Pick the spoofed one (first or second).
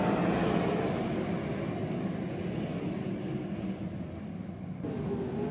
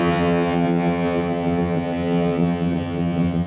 second